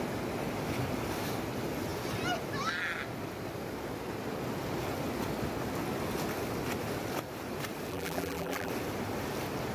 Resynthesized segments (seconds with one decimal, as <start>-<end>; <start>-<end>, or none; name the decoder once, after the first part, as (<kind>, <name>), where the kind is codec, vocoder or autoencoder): 7.9-8.7 (vocoder, BigVGAN v2)